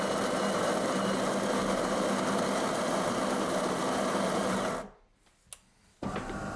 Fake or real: real